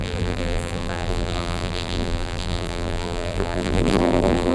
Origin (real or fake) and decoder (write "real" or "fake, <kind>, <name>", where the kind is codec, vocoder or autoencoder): fake, vocoder, BigVGAN v2